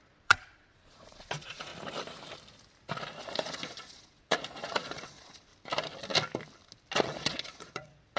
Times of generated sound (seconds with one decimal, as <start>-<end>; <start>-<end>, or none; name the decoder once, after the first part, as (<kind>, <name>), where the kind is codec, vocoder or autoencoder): 0.0-1.7 (vocoder, Vocos); 3.2-5.5; 7.0-8.2